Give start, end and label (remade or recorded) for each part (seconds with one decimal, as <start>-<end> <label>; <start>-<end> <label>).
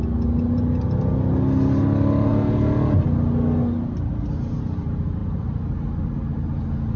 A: 0.0-7.0 recorded